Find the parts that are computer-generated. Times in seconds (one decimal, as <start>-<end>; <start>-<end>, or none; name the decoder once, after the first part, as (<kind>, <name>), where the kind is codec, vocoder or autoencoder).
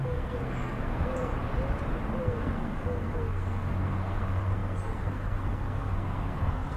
0.0-1.3 (codec, SNAC); 2.2-6.8